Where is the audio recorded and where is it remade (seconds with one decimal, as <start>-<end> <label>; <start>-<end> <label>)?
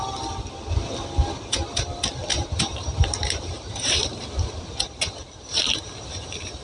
0.0-2.3 recorded; 2.3-6.6 remade